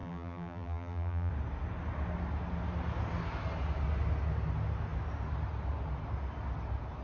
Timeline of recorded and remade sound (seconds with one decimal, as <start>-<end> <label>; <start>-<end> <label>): 0.0-1.3 remade; 1.3-7.0 recorded